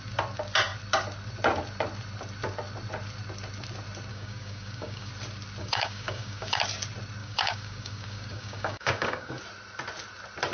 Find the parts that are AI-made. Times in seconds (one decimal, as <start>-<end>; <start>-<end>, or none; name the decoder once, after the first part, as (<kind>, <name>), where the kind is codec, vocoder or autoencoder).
4.1-5.1 (codec, DAC); 5.6-6.6; 7.2-9.4